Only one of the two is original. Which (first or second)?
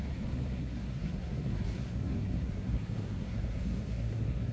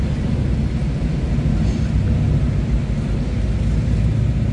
second